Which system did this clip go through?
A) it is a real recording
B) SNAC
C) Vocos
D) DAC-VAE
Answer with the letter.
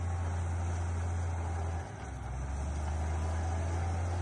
A